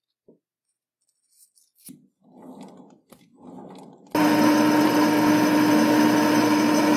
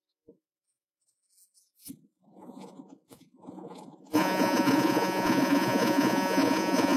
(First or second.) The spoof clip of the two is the second